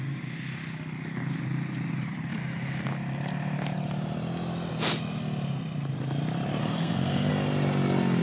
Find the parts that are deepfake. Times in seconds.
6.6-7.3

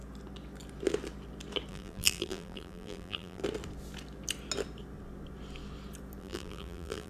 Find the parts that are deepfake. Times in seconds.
1.7-3.4; 6.2-7.1

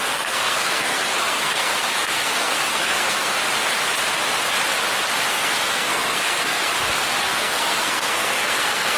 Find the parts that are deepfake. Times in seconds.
0.0-3.4; 5.3-6.7; 7.2-9.0

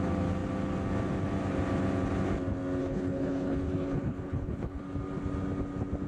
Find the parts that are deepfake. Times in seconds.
2.8-4.8

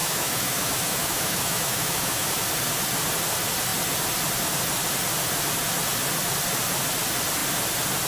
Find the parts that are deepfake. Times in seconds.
0.0-2.3

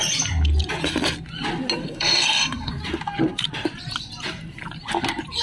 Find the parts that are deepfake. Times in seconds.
1.8-2.7

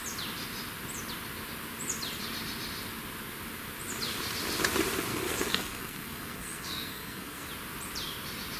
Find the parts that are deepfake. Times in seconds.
5.1-7.5